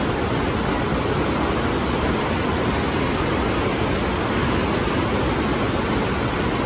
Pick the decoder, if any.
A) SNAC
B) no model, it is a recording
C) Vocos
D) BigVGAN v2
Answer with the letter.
B